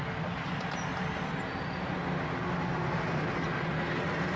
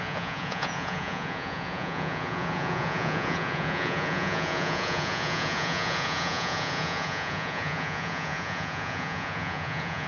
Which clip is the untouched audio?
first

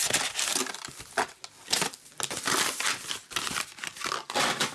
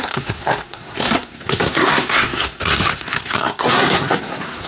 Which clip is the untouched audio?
first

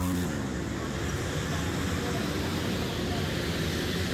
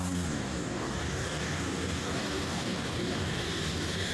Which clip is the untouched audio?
first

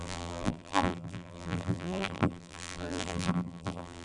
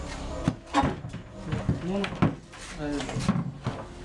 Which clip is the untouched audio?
second